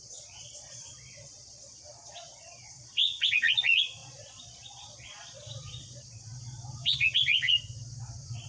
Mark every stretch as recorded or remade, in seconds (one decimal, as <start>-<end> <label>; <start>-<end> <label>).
0.0-8.5 remade